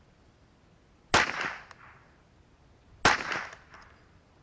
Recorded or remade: recorded